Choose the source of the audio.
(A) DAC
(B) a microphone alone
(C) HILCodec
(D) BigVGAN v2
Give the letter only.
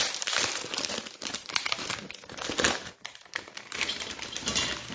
D